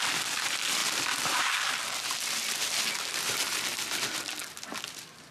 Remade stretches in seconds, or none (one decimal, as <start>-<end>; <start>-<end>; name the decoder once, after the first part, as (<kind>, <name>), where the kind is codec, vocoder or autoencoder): 0.0-4.4 (vocoder, BigVGAN v2)

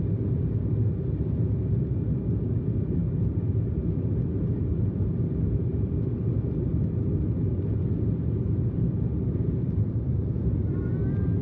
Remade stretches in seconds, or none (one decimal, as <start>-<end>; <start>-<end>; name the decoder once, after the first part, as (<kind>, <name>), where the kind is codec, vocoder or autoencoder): none

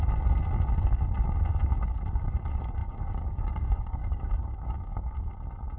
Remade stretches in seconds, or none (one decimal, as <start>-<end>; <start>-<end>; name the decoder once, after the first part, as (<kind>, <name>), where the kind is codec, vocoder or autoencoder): 2.8-5.3 (codec, DAC)

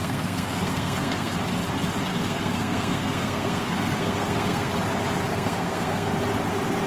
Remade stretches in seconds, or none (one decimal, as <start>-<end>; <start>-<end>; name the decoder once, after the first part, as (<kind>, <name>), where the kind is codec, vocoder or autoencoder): 0.0-1.4 (codec, SNAC); 2.1-4.7; 5.3-6.1

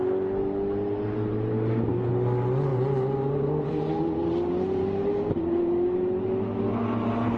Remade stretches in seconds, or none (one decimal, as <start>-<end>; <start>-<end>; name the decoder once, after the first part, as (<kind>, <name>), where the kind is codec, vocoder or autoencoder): none

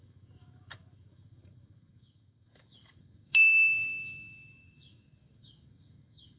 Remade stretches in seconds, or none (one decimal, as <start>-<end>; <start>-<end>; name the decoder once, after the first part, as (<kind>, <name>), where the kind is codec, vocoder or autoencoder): 0.0-6.4 (codec, DAC)

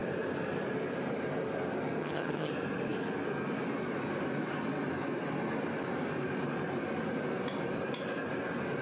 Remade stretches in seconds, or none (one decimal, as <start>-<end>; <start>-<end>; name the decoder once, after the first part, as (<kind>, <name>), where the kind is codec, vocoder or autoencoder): 2.0-2.5 (vocoder, HiFi-GAN)